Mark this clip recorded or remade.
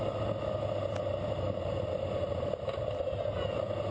recorded